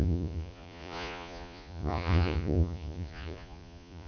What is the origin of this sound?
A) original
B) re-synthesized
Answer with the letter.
B